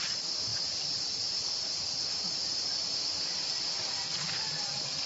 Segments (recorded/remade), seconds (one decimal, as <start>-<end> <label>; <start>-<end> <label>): 0.0-0.5 recorded; 0.5-3.6 remade; 3.6-5.1 recorded